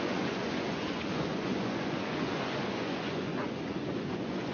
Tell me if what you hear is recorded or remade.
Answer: remade